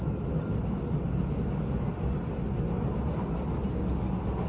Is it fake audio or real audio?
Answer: real